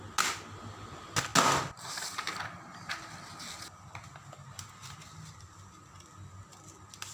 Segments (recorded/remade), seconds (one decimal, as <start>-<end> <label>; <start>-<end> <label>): 0.0-7.1 recorded